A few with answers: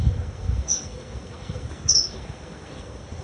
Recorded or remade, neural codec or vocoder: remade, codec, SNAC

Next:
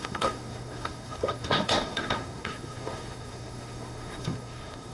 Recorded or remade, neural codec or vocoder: remade, codec, SNAC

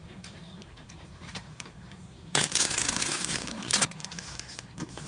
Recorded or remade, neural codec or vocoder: remade, codec, SNAC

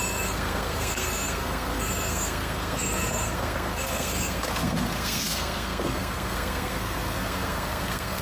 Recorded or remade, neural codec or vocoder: remade, codec, SNAC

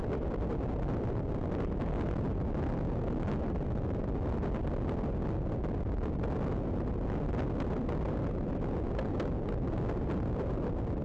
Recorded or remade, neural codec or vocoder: recorded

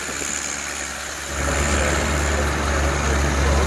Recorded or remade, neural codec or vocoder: recorded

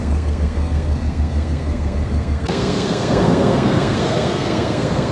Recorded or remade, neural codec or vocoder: remade, codec, SNAC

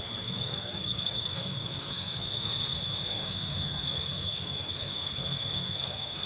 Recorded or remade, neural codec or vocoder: remade, codec, SNAC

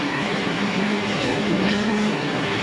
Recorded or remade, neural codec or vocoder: remade, codec, SNAC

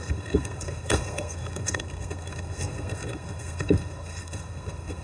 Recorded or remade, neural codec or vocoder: remade, codec, SNAC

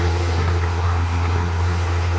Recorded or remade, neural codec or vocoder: remade, codec, SNAC